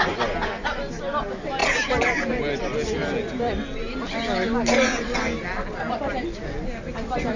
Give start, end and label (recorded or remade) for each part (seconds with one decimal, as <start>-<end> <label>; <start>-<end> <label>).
0.0-7.4 recorded